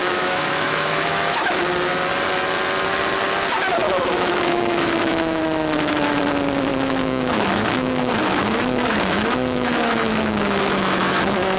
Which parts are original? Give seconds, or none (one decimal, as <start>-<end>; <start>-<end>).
1.6-3.8; 5.4-6.7